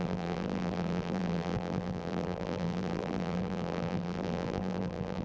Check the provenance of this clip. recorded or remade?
remade